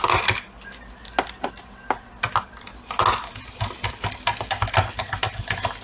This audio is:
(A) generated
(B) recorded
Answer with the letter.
B